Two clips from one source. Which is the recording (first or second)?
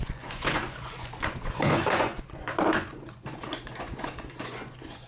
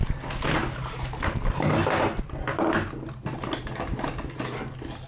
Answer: second